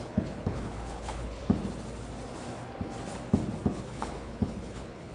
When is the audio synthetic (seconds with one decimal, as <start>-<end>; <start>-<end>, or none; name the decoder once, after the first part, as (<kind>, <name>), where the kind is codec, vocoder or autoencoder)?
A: 0.0-1.4 (codec, HILCodec); 3.7-5.1